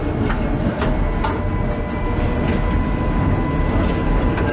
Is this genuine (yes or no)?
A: yes